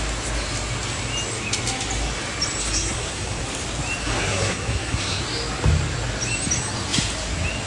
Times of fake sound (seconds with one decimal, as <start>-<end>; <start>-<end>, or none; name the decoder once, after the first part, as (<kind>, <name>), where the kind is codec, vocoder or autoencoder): 2.6-3.4 (codec, SNAC); 4.0-5.2